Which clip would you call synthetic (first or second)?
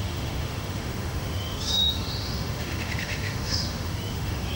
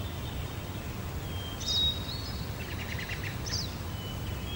first